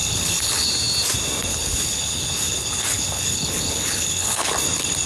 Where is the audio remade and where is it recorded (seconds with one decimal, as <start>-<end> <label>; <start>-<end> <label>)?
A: 0.0-0.7 remade; 0.7-1.5 recorded; 1.5-4.5 remade; 4.5-5.1 recorded